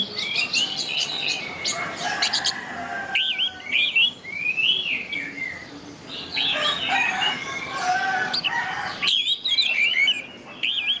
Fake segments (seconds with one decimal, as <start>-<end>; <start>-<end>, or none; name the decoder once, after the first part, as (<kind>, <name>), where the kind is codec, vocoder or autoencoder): 0.7-1.4 (vocoder, HiFi-GAN)